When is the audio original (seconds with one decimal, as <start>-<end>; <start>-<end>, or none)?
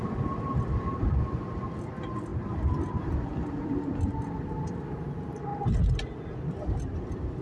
5.5-6.7